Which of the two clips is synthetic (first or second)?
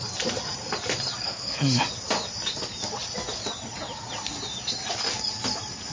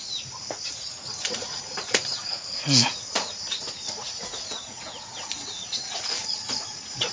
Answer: second